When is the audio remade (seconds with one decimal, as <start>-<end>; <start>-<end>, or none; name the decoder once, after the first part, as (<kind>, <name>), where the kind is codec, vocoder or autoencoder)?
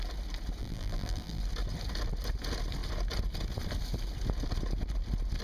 0.6-1.4 (vocoder, BigVGAN v2)